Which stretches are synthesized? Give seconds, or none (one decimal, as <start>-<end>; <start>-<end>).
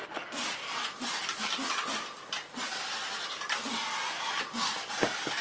0.4-2.2